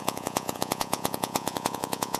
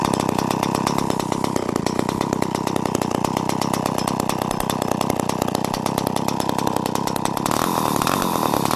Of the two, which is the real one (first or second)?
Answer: second